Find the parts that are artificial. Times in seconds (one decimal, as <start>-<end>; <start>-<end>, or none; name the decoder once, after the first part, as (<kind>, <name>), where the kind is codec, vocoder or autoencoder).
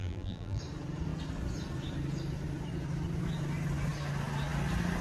0.0-0.6 (vocoder, BigVGAN v2)